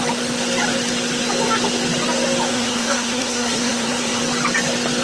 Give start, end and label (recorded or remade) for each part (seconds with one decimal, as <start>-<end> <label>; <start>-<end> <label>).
0.0-2.5 recorded; 2.5-4.2 remade; 4.2-5.0 recorded